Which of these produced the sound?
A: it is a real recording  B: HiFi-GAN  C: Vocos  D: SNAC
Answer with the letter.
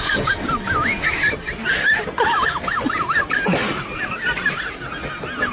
A